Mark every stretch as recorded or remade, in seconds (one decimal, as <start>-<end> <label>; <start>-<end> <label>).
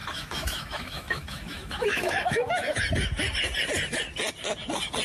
0.0-2.8 remade; 2.8-5.0 recorded